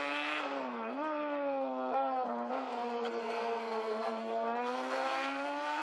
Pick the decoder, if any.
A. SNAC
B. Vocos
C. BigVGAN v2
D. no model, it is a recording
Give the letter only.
A